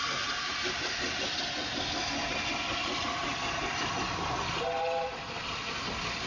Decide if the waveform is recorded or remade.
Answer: recorded